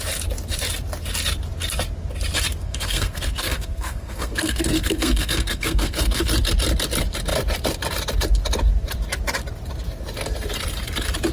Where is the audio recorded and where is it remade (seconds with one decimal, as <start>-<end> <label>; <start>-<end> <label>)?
0.0-2.6 recorded; 2.6-6.3 remade; 6.3-11.3 recorded